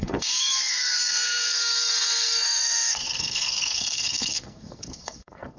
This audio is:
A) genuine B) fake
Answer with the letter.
B